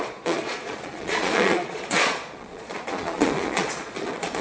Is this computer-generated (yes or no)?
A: yes